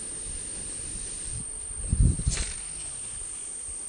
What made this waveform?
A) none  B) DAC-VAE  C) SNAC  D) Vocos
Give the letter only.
A